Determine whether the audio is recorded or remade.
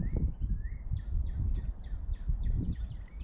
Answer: remade